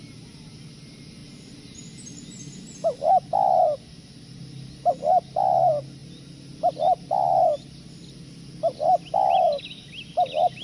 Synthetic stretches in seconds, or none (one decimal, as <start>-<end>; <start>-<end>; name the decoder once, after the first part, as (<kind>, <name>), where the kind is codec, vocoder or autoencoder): none